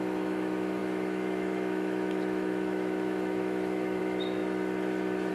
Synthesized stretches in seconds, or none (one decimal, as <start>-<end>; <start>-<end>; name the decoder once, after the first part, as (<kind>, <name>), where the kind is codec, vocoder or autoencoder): 0.0-4.4 (autoencoder, DAC-VAE)